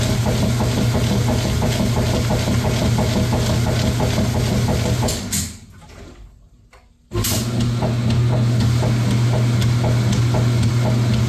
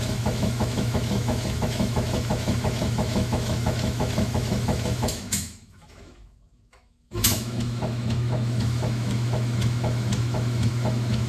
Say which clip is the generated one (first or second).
second